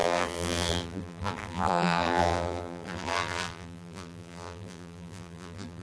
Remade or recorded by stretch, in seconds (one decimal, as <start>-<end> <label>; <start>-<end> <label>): 0.0-5.8 remade